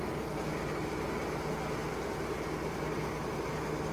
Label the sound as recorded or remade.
recorded